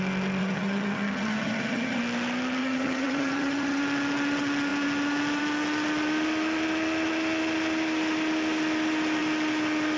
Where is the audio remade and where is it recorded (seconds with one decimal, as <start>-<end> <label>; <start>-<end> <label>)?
0.0-0.4 recorded; 0.4-2.0 remade; 2.0-2.6 recorded; 2.6-3.8 remade; 3.8-10.0 recorded